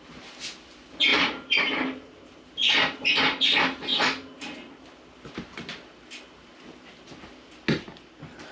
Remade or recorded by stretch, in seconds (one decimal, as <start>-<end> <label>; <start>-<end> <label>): 0.0-1.1 recorded; 1.1-2.2 remade; 2.2-8.5 recorded